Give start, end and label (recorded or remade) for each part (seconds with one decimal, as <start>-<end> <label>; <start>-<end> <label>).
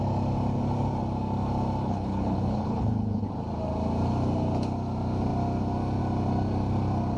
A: 0.0-1.8 recorded; 1.8-3.3 remade; 3.3-7.2 recorded